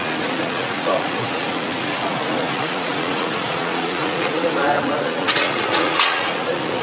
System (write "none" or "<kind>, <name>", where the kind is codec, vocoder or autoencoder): vocoder, Vocos